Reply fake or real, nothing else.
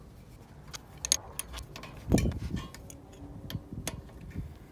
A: real